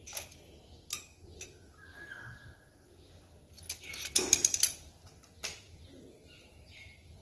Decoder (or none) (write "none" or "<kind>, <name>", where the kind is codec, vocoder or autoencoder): none